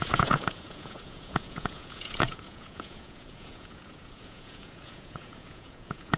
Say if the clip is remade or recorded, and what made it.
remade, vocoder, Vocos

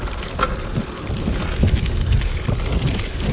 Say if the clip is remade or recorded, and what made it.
recorded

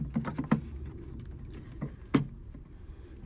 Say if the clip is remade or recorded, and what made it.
recorded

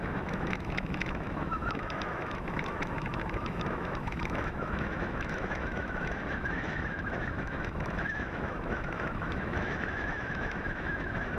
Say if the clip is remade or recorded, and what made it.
remade, autoencoder, DAC-VAE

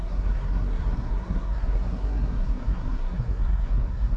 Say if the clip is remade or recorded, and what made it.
remade, codec, SNAC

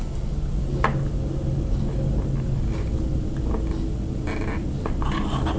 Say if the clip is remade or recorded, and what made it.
recorded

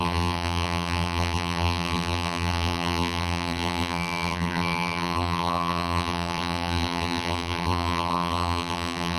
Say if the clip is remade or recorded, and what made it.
remade, vocoder, BigVGAN v2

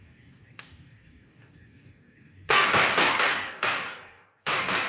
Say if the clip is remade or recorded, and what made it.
remade, codec, DAC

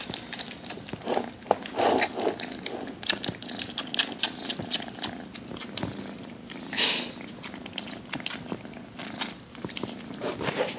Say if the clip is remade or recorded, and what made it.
recorded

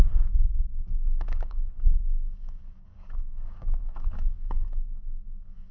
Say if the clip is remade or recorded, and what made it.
remade, codec, DAC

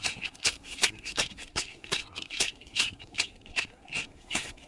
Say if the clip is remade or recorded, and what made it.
remade, codec, SNAC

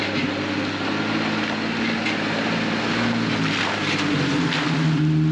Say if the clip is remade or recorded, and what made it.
recorded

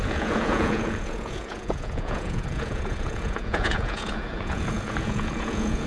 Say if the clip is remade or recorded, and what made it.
remade, vocoder, Vocos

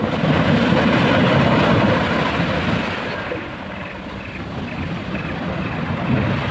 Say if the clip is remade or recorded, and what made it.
recorded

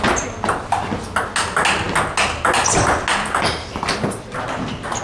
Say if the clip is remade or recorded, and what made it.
recorded